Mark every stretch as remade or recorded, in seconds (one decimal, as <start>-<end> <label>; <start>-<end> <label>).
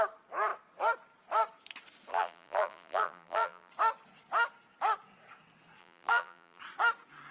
0.0-2.1 recorded; 2.1-3.7 remade; 3.7-5.8 recorded; 5.8-6.6 remade; 6.6-7.3 recorded